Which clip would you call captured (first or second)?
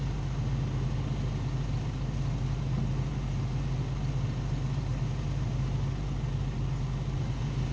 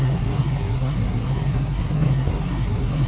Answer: first